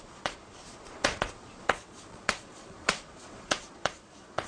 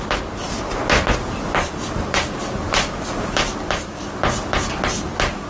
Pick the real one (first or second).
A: second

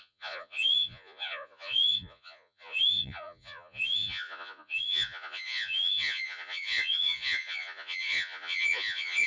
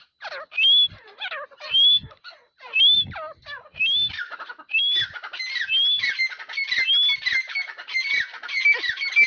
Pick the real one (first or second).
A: second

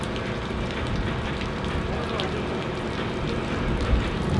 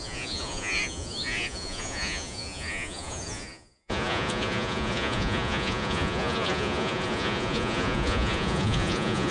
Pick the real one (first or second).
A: first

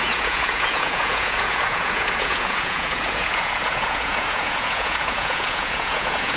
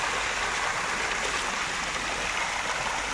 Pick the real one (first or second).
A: second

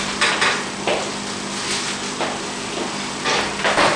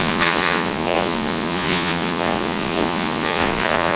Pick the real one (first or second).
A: first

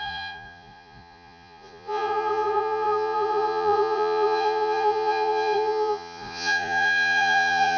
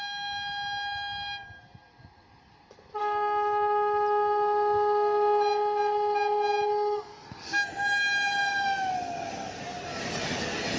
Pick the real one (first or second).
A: second